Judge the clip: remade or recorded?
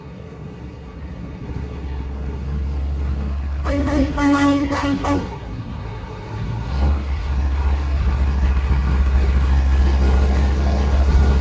remade